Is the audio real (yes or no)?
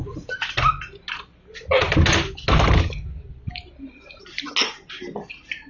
yes